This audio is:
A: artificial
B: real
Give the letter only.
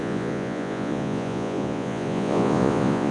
A